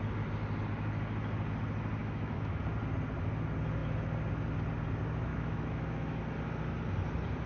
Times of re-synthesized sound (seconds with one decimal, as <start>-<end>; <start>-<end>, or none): 2.0-2.6; 5.3-6.2